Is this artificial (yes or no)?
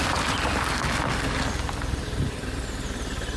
no